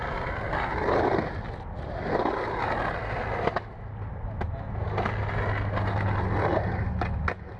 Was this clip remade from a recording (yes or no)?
no